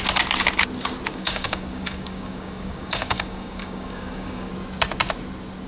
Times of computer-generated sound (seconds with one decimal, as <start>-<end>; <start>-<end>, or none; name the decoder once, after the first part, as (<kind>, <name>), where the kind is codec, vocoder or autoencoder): 1.1-4.5 (codec, DAC)